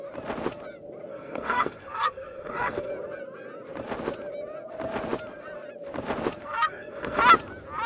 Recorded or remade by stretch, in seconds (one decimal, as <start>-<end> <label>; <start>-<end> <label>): 0.0-1.1 recorded; 1.1-2.9 remade; 2.9-6.4 recorded; 6.4-7.2 remade; 7.2-7.9 recorded